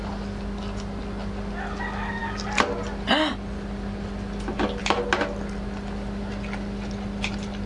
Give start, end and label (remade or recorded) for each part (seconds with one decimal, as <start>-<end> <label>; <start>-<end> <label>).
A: 0.0-7.7 recorded